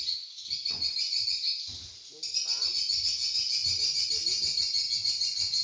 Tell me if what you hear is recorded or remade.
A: recorded